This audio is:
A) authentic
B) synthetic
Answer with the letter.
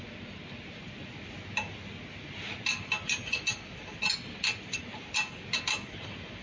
A